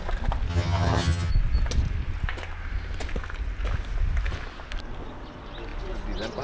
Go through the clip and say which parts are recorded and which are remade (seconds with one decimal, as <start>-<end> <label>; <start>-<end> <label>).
0.0-0.5 recorded; 0.5-1.3 remade; 1.3-6.4 recorded